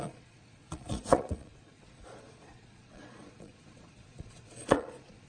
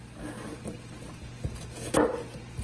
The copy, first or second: first